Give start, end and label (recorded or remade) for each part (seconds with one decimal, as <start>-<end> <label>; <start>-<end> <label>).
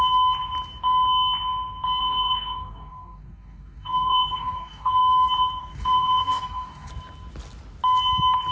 0.0-2.0 recorded; 2.0-5.0 remade; 5.0-5.6 recorded; 5.6-6.9 remade; 6.9-8.5 recorded